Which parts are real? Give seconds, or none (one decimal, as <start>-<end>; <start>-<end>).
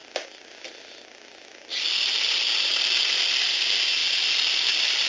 0.0-5.1